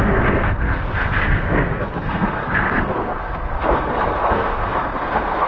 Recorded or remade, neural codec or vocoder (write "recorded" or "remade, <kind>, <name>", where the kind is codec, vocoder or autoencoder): remade, codec, SNAC